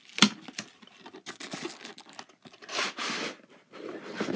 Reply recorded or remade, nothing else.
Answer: recorded